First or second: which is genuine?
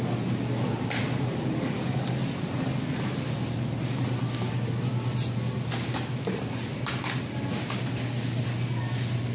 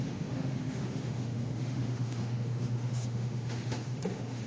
first